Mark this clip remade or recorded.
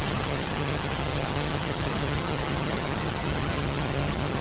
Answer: remade